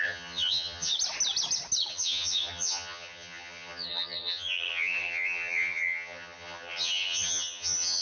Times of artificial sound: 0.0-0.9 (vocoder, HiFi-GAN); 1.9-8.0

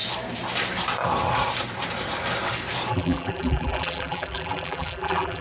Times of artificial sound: 2.9-5.4 (vocoder, BigVGAN v2)

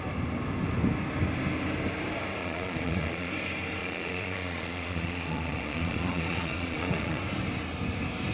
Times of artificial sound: 2.4-3.3 (vocoder, Vocos); 3.8-7.2

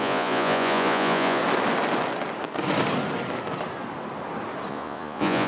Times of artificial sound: 0.0-1.4 (vocoder, Vocos); 4.7-5.5

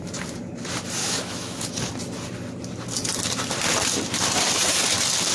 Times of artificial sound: 1.0-1.7 (autoencoder, DAC-VAE)

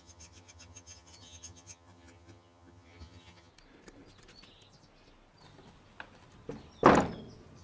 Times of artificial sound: 0.0-3.5 (vocoder, HiFi-GAN)

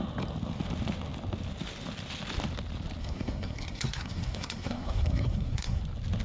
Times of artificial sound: 3.0-5.8 (codec, SNAC)

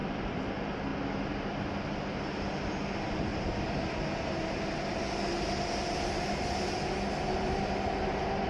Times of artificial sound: 0.0-0.5 (vocoder, BigVGAN v2)